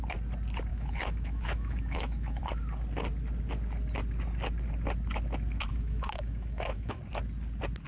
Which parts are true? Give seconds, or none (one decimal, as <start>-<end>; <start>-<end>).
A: 0.0-0.7; 2.4-5.7; 7.0-7.9